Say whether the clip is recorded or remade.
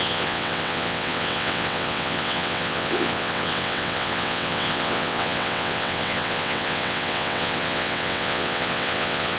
remade